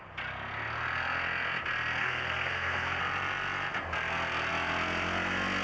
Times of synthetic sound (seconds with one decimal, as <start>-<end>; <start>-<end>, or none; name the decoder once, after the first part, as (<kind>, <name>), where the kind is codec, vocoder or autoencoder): 2.0-3.0 (codec, SNAC)